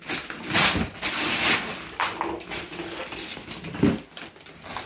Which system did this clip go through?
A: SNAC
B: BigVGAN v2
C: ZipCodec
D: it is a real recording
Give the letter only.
D